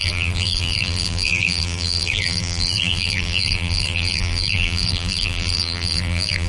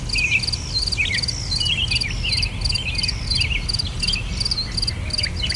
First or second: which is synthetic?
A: first